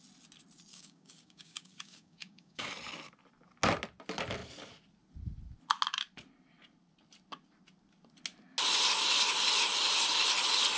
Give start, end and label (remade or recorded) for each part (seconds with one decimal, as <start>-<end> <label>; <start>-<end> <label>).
0.0-0.7 recorded; 0.7-2.7 remade; 2.7-10.8 recorded